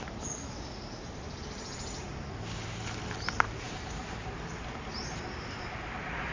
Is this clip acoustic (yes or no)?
yes